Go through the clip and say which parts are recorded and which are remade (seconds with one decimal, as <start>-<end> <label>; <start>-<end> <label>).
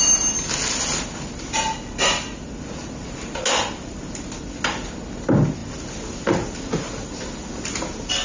0.0-8.2 recorded